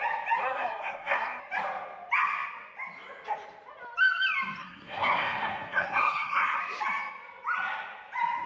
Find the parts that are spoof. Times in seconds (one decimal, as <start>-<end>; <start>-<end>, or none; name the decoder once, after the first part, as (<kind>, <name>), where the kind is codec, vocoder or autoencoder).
0.4-1.4 (codec, SNAC); 4.6-6.6

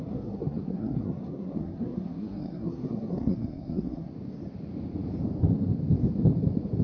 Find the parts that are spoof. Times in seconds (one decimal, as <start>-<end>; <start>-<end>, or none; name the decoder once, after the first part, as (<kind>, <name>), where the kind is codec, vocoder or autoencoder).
0.0-4.1 (codec, SNAC)

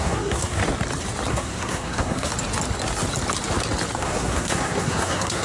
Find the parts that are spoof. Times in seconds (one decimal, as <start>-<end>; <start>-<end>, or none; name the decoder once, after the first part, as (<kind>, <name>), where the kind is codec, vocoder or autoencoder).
0.0-0.6 (codec, SNAC); 1.3-2.3; 4.0-5.4

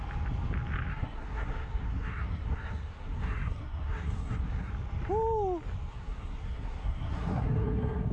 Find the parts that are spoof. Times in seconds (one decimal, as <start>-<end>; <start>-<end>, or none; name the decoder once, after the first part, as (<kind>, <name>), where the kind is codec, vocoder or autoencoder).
0.9-4.7 (codec, SNAC); 5.9-8.1

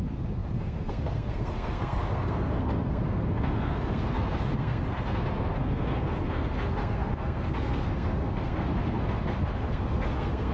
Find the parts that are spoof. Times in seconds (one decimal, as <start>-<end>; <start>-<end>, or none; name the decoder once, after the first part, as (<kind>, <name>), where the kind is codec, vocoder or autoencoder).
0.0-10.5 (codec, SNAC)

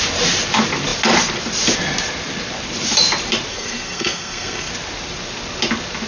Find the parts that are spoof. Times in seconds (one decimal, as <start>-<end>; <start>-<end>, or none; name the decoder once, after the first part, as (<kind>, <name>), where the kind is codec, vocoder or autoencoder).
3.5-4.7 (codec, SNAC)

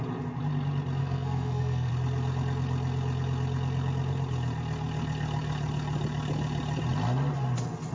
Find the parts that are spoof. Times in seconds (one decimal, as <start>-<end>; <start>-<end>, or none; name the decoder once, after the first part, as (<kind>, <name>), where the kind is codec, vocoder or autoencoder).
1.0-1.9 (codec, SNAC)

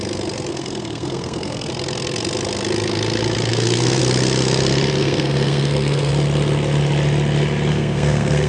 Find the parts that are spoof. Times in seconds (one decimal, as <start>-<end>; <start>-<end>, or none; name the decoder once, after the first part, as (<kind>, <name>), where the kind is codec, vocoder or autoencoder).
0.5-1.7 (codec, SNAC); 3.5-4.0; 5.0-6.1; 7.7-8.5